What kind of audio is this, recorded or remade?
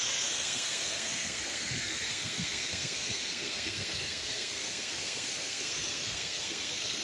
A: remade